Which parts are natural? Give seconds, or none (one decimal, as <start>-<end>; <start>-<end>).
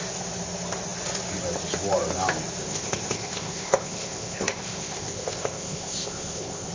0.0-2.6